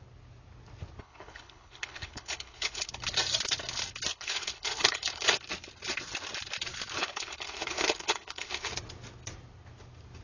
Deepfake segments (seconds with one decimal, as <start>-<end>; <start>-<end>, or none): 1.0-2.9; 4.1-5.3; 7.0-8.7